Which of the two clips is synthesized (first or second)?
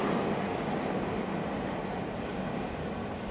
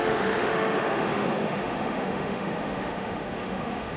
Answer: second